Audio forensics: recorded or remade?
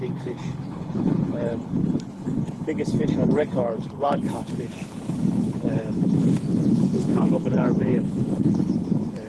remade